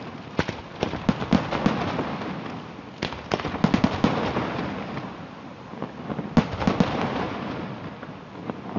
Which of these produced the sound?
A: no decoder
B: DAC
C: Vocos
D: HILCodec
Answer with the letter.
A